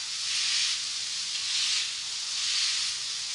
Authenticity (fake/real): fake